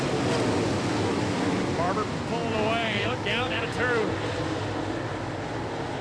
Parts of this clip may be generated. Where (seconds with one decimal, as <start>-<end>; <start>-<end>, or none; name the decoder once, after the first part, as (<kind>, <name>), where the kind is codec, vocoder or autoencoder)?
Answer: 2.8-3.6 (codec, DAC)